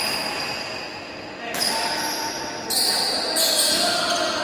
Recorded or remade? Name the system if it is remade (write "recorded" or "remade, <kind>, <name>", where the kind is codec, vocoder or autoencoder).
recorded